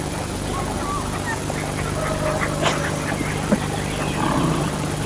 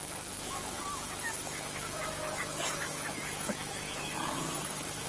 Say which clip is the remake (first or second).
second